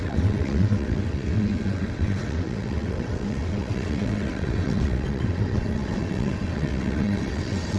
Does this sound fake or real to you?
fake